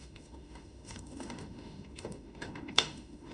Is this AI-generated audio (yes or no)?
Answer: yes